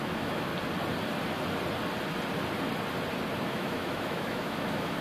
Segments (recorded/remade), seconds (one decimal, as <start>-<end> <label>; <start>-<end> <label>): 0.0-0.5 remade; 0.5-3.5 recorded; 3.5-5.0 remade